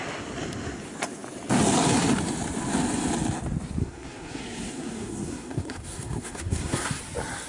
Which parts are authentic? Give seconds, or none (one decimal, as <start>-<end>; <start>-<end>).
0.0-3.8; 7.0-7.5